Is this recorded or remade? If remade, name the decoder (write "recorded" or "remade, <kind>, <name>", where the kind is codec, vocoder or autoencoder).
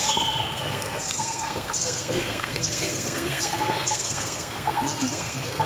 remade, codec, SNAC